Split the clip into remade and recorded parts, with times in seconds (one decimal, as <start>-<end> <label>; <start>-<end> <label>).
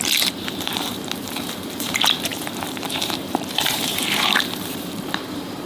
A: 0.0-5.7 remade